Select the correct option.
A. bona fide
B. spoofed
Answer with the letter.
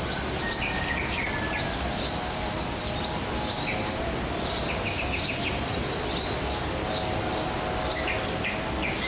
A